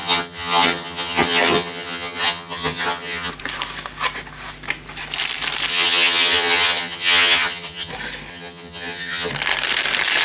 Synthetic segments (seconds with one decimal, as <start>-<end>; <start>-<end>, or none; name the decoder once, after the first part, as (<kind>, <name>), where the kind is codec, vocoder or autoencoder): 0.0-3.3 (vocoder, HiFi-GAN); 5.7-7.9; 8.3-9.3